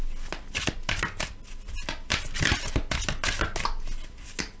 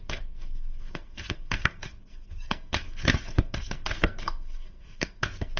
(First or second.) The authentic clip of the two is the first